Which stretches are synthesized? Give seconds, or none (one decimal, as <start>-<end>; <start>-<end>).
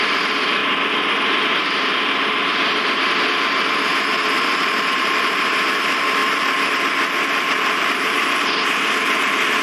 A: 0.0-0.6; 1.6-3.9; 4.7-6.2; 7.3-9.6